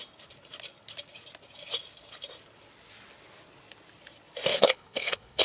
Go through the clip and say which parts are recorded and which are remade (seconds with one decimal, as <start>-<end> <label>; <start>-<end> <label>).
0.0-4.5 recorded; 4.5-5.4 remade